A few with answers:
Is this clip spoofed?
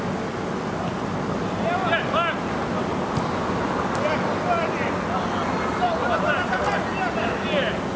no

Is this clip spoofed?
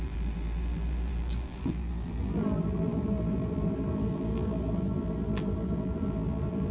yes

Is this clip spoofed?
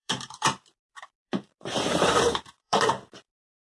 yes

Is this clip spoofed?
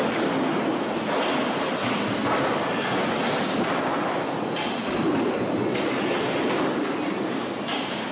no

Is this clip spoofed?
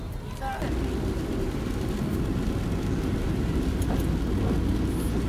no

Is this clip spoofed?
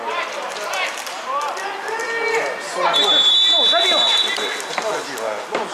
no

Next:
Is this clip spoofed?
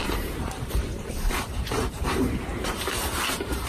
yes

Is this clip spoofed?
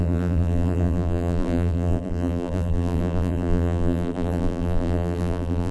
yes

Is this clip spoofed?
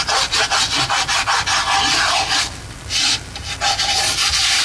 yes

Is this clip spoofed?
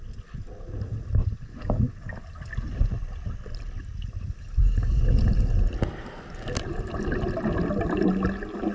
no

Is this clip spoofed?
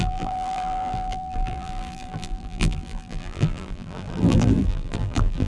yes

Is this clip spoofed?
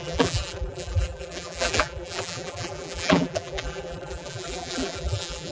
yes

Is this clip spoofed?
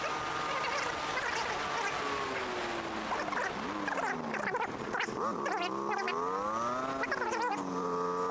no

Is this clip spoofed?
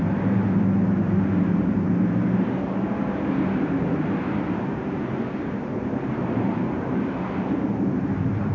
yes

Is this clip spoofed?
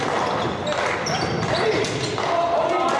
no